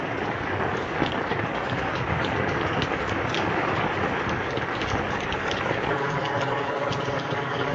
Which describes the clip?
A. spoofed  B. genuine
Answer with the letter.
A